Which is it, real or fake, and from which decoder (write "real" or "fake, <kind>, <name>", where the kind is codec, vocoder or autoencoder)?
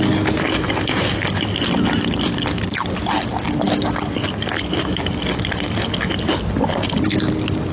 real